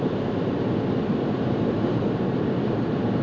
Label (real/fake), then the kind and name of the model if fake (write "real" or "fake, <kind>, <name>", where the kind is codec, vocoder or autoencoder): real